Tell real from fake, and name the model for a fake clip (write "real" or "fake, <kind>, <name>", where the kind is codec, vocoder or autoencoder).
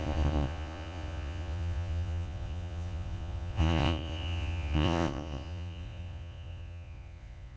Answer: fake, vocoder, Vocos